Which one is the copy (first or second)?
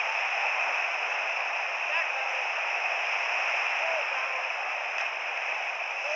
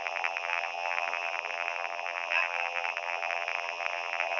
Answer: second